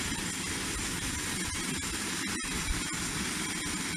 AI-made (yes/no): no